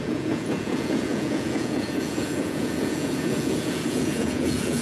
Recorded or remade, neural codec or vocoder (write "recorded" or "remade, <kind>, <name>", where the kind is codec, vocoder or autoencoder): remade, vocoder, Vocos